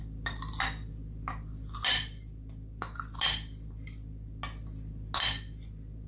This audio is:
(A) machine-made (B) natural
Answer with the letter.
B